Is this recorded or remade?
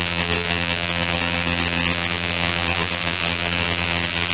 remade